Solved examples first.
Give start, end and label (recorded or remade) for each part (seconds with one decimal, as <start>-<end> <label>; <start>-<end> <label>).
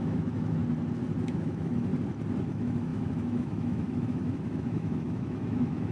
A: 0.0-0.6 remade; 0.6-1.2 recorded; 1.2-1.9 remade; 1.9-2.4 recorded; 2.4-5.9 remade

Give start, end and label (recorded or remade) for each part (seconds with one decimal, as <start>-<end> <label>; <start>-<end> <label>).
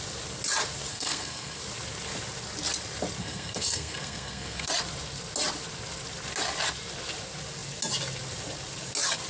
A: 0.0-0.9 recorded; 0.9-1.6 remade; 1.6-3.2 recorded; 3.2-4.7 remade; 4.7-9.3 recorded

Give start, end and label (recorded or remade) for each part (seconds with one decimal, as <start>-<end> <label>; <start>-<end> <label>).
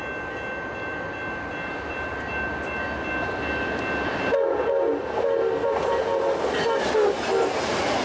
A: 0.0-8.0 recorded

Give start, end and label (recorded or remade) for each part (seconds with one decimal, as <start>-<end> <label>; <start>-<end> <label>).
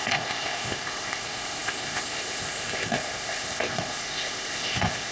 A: 0.0-5.1 remade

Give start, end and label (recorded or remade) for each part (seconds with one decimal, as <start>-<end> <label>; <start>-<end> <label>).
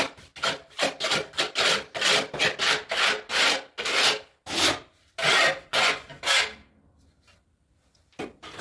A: 0.0-5.7 recorded; 5.7-6.2 remade; 6.2-8.6 recorded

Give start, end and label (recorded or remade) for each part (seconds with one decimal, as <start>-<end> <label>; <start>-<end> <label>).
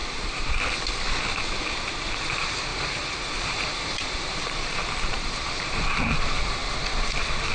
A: 0.0-0.6 remade; 0.6-2.7 recorded; 2.7-5.7 remade; 5.7-7.5 recorded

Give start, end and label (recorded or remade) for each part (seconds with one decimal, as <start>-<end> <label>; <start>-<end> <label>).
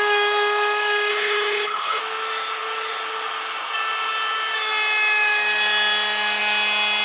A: 0.0-1.1 recorded; 1.1-2.0 remade; 2.0-7.0 recorded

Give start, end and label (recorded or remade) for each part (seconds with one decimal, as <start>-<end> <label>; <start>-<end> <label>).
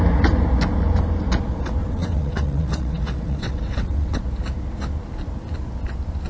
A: 0.0-1.8 recorded; 1.8-4.2 remade; 4.2-6.3 recorded